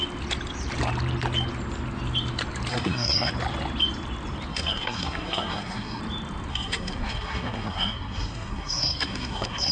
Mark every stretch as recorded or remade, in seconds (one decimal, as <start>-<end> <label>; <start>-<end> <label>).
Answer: 0.0-2.7 recorded; 2.7-3.3 remade; 3.3-4.5 recorded; 4.5-6.0 remade; 6.0-6.5 recorded; 6.5-9.7 remade